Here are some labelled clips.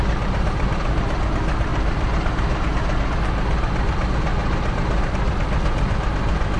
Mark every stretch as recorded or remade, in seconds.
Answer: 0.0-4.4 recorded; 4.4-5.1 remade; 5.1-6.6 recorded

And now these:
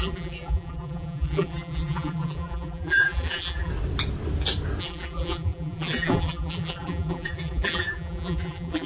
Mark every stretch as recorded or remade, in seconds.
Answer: 0.0-3.7 remade; 3.7-4.8 recorded; 4.8-8.9 remade

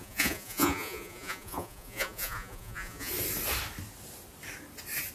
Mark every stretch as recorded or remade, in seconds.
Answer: 0.0-3.1 remade; 3.1-5.1 recorded

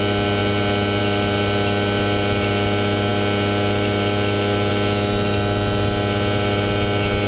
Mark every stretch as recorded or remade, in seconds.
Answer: 0.0-7.3 recorded

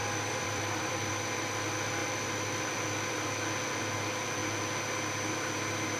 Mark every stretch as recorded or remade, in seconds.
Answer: 0.0-1.1 remade; 1.1-6.0 recorded

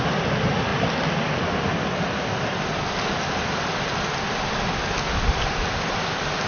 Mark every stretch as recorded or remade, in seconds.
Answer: 0.0-6.5 recorded

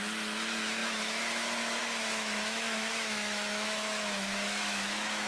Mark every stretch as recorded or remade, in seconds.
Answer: 0.0-5.3 remade

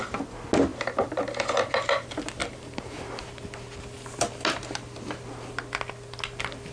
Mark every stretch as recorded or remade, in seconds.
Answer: 0.0-2.4 recorded; 2.4-3.2 remade; 3.2-6.7 recorded